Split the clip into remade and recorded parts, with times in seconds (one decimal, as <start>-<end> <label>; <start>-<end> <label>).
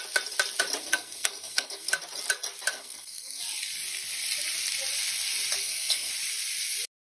0.0-0.8 recorded; 0.8-1.9 remade; 1.9-2.7 recorded; 2.7-3.4 remade; 3.4-5.6 recorded; 5.6-6.1 remade; 6.1-7.1 recorded